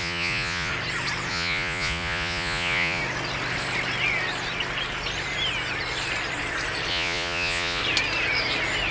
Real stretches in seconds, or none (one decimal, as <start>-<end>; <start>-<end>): 0.7-1.3; 3.0-6.9; 7.8-8.9